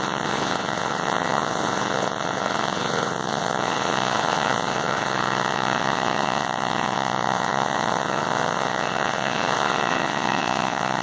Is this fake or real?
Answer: fake